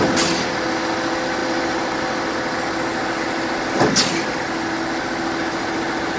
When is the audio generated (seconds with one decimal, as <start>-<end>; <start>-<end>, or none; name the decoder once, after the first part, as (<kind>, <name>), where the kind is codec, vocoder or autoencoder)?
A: none